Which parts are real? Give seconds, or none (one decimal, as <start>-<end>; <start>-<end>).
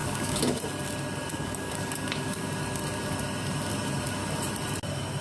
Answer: 0.6-1.3; 2.4-5.2